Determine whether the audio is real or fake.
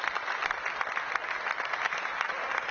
real